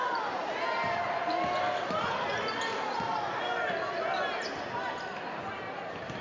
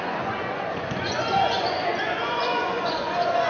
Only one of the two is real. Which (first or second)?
first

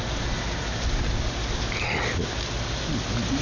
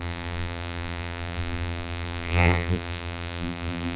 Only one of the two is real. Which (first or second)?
first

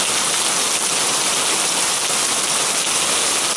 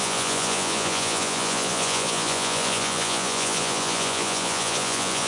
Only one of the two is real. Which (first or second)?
first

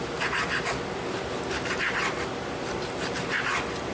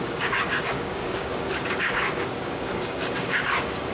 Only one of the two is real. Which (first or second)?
first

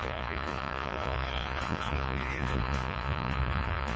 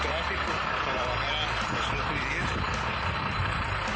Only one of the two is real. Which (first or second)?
second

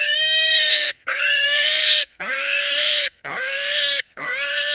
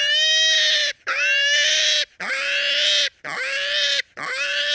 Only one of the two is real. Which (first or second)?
second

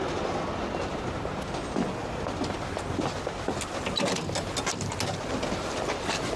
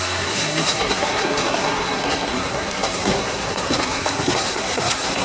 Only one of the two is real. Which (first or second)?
first